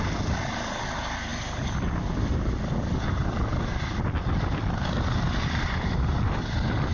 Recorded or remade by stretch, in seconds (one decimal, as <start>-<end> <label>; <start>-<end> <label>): 0.0-6.9 recorded